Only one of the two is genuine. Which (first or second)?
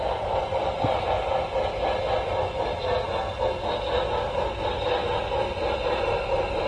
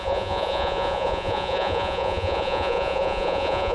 first